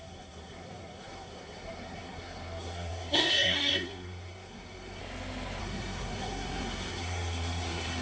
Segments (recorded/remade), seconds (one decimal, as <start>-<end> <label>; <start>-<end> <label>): 0.0-5.0 remade; 5.0-5.6 recorded; 5.6-8.0 remade